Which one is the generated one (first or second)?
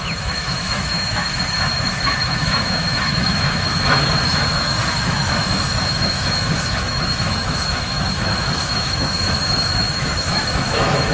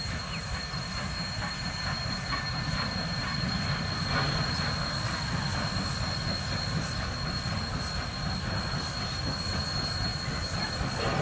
first